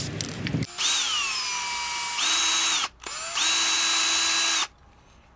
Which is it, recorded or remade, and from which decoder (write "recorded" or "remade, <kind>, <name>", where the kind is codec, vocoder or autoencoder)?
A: recorded